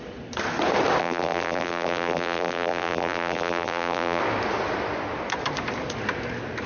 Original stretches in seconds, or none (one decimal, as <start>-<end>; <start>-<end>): 0.0-1.0; 4.2-6.7